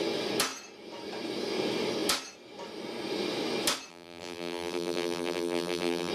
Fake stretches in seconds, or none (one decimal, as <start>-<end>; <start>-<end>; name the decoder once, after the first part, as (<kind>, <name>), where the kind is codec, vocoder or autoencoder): 3.9-6.1 (vocoder, BigVGAN v2)